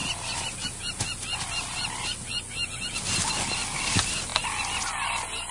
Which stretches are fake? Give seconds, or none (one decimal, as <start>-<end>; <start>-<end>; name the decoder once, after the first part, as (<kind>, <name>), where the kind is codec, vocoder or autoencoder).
none